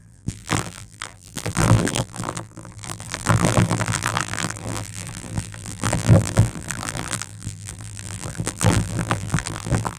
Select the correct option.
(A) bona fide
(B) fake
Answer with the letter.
B